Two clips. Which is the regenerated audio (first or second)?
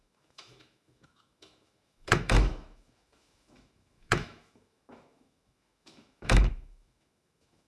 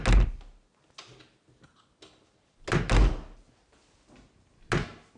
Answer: first